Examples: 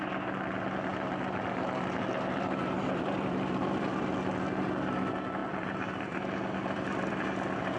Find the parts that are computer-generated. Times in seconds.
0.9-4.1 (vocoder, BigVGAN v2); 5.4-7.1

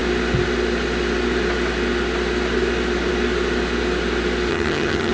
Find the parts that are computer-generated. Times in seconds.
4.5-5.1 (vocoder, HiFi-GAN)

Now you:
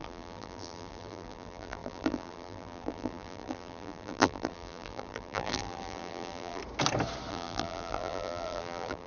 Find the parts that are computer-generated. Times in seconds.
0.0-6.6 (vocoder, BigVGAN v2); 7.3-9.1

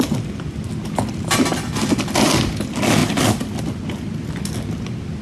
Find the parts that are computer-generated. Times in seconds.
3.0-3.6 (vocoder, BigVGAN v2)